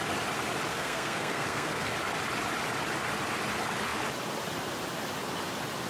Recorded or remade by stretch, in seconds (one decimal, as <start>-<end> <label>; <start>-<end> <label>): 0.0-0.7 recorded; 0.7-1.9 remade; 1.9-5.9 recorded